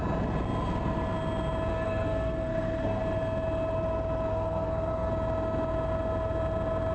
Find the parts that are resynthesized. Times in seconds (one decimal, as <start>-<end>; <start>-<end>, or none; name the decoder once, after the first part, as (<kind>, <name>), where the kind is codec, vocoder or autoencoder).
1.7-3.0 (codec, SNAC); 4.3-5.1